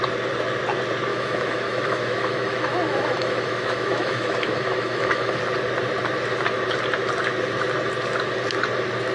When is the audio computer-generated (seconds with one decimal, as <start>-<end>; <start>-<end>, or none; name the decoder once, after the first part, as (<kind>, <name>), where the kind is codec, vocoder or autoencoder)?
1.1-5.4 (autoencoder, DAC-VAE)